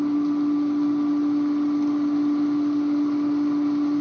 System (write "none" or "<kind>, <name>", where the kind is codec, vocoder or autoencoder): none